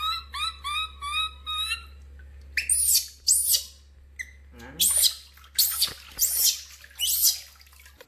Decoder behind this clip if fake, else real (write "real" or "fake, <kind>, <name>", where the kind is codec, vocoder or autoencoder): real